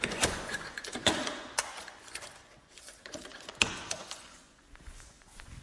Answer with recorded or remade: remade